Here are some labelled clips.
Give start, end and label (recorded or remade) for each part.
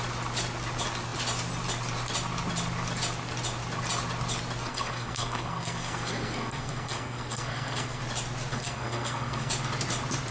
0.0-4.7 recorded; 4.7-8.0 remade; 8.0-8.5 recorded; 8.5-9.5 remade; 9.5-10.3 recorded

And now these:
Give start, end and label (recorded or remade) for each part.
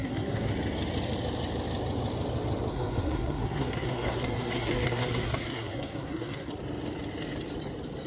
0.0-0.5 remade; 0.5-2.7 recorded; 2.7-6.5 remade; 6.5-8.1 recorded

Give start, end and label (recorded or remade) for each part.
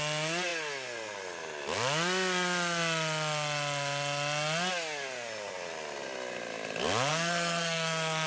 0.0-7.1 recorded; 7.1-8.3 remade